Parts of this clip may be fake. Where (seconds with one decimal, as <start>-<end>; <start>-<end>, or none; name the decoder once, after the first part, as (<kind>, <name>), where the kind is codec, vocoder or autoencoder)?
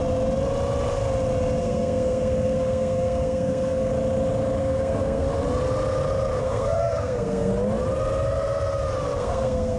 1.6-3.9 (codec, SNAC); 4.6-5.3; 6.4-7.5; 9.2-9.8